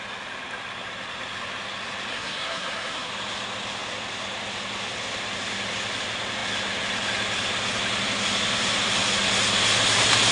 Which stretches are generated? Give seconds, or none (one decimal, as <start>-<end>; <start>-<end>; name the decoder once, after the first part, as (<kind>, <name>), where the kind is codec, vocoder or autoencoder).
2.1-3.1 (codec, SNAC)